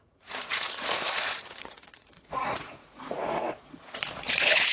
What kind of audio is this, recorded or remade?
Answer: remade